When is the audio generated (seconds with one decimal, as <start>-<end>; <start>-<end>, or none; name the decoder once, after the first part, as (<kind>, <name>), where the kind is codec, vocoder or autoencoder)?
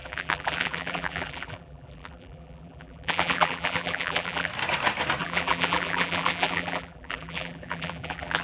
0.0-4.5 (vocoder, BigVGAN v2); 5.2-8.4